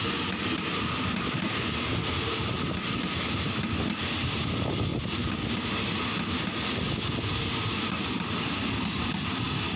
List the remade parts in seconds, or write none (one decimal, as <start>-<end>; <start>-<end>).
none